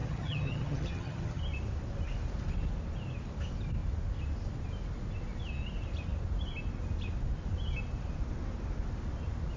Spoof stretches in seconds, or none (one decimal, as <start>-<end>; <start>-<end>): 0.0-1.4